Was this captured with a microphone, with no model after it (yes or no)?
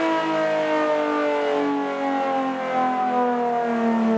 yes